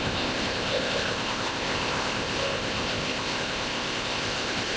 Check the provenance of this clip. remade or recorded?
remade